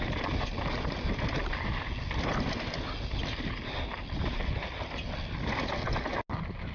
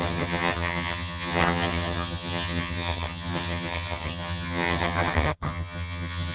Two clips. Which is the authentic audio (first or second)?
first